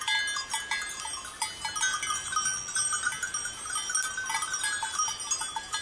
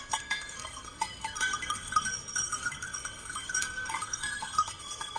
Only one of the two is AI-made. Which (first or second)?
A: second